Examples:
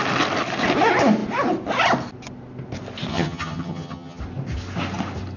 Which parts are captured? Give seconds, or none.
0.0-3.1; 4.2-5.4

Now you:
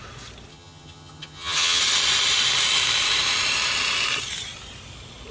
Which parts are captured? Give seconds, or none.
0.0-0.5; 1.8-5.3

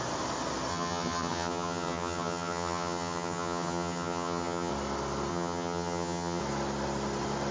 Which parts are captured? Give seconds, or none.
0.0-0.7; 4.7-5.3; 6.4-7.5

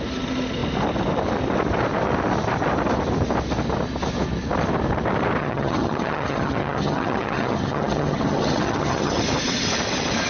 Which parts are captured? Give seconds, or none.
0.0-5.4; 9.2-10.3

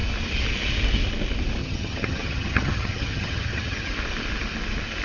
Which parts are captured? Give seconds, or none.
0.0-1.6; 3.9-5.0

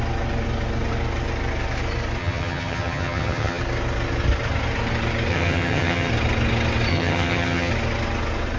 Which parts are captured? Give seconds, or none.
0.0-2.2; 3.6-5.3; 6.1-6.9; 7.7-8.6

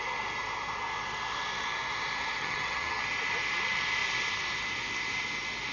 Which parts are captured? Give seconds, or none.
0.0-2.4; 3.0-5.7

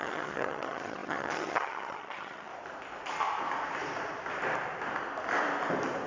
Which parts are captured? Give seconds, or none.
2.5-6.1